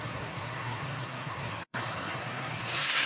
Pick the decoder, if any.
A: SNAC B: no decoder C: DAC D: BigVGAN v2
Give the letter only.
A